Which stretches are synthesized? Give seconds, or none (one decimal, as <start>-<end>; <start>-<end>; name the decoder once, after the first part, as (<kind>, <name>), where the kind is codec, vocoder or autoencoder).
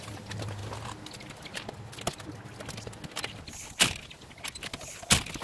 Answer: none